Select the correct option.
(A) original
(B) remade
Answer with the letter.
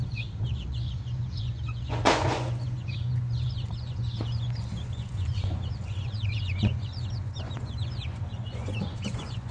B